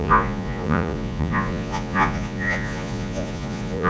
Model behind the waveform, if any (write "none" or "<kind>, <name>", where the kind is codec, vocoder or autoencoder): vocoder, Vocos